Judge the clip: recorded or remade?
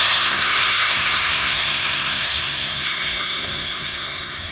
remade